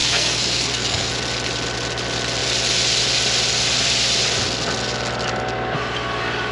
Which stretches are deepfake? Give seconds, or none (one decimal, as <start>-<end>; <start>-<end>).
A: 0.0-1.1